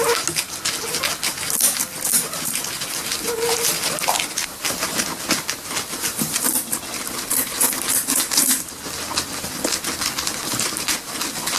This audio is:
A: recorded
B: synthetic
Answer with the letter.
A